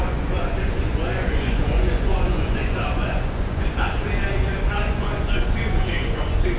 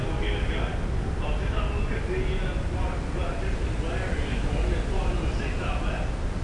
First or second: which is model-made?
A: first